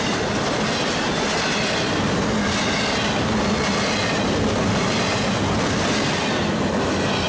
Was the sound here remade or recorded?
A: recorded